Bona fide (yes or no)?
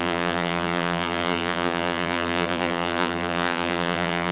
no